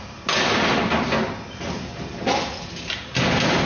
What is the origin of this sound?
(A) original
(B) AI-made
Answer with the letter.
A